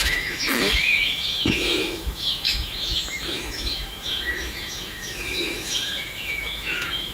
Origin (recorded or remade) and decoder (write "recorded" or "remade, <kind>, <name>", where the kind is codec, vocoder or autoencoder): remade, autoencoder, DAC-VAE